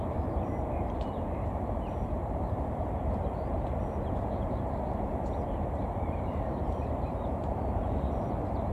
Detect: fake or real fake